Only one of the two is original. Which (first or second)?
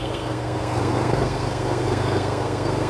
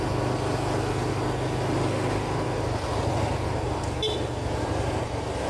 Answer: second